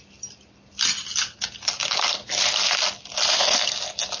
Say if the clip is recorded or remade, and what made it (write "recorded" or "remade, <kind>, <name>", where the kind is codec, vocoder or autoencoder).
recorded